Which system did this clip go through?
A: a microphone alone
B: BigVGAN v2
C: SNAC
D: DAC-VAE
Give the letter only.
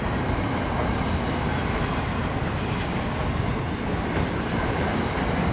A